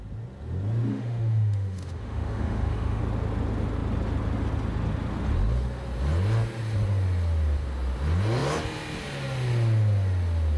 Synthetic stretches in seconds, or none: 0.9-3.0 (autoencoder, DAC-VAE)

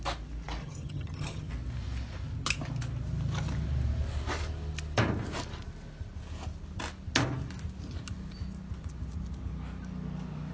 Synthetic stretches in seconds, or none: 0.6-1.5 (vocoder, HiFi-GAN)

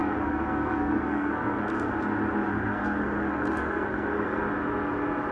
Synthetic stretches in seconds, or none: 0.0-1.9 (codec, SNAC); 2.5-4.4

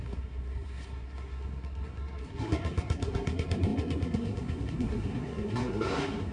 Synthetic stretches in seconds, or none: 0.0-6.3 (codec, SNAC)

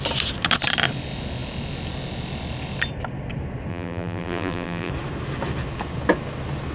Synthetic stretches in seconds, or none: 3.7-4.9 (vocoder, BigVGAN v2)